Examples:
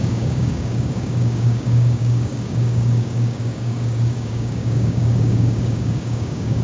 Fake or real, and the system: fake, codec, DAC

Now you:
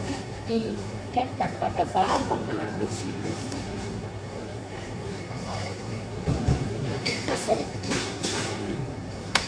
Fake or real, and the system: fake, codec, SNAC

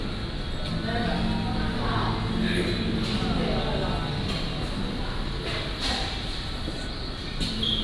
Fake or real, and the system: real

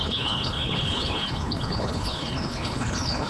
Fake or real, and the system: fake, codec, HILCodec